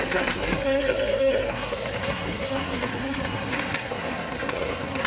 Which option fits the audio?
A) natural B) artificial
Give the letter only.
B